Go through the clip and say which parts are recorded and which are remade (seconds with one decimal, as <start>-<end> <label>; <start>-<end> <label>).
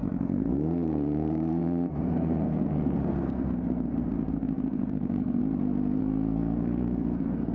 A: 0.0-5.4 remade; 5.4-6.0 recorded; 6.0-7.5 remade